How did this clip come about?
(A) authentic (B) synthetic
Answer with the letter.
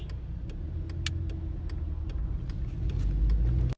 A